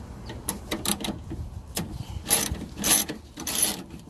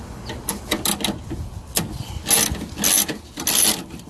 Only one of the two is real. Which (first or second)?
second